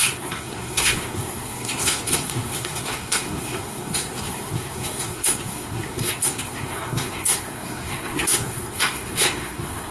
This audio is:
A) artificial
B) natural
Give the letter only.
A